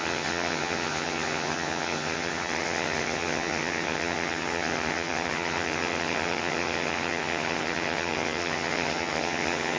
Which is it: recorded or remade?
remade